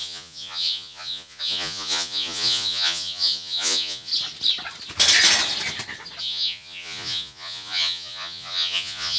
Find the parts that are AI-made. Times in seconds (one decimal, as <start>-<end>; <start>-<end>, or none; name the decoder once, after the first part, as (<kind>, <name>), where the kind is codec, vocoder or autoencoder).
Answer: 0.0-4.1 (vocoder, Vocos); 6.2-9.2